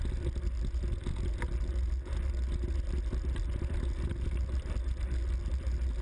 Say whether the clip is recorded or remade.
recorded